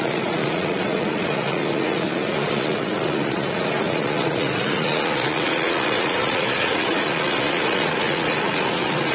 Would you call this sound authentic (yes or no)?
no